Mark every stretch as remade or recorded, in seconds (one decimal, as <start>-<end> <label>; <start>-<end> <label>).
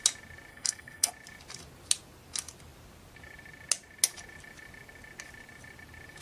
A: 0.0-0.5 recorded; 0.5-1.1 remade; 1.1-6.2 recorded